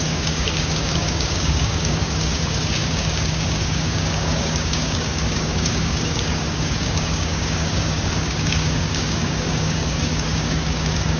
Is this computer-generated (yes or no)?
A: yes